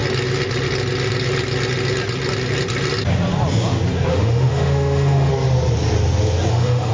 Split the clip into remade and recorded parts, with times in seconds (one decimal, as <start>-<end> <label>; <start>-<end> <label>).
0.0-4.1 recorded; 4.1-5.3 remade; 5.3-6.5 recorded; 6.5-6.9 remade